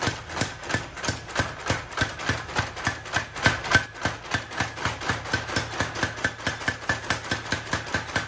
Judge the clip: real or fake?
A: real